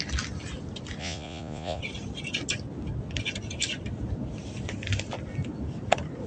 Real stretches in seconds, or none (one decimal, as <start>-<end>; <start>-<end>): 0.0-1.0; 1.8-6.3